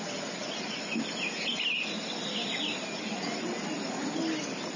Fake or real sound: real